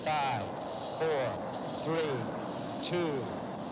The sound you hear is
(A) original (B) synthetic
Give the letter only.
A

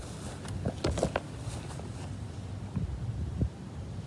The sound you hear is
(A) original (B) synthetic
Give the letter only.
A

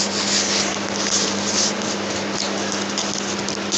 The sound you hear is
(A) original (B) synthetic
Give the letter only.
A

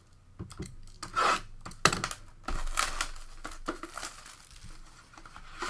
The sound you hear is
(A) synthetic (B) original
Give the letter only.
B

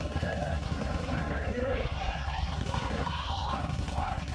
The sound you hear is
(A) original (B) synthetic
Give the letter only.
B